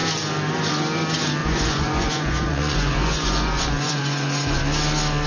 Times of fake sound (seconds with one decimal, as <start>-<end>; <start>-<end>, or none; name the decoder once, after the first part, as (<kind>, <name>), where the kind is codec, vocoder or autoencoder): 1.4-4.6 (vocoder, Vocos)